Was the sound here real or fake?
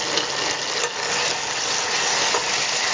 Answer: real